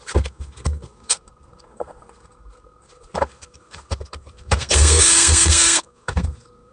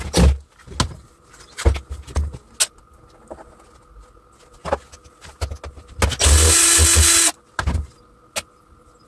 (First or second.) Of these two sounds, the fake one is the first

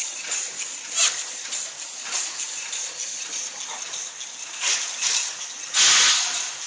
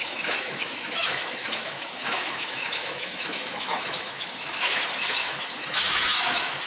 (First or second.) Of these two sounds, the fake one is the second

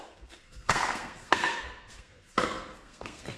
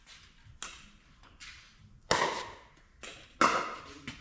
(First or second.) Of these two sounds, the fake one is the first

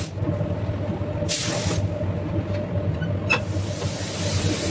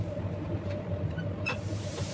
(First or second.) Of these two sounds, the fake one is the second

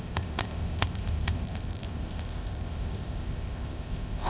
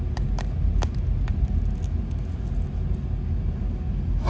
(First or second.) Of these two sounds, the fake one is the first